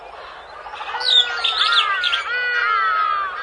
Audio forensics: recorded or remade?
recorded